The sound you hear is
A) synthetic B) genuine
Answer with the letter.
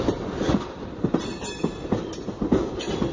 B